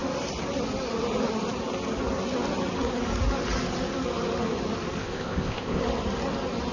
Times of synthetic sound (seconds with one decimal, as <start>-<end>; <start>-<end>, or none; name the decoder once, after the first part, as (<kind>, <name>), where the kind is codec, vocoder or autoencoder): 5.0-5.8 (codec, ZipCodec)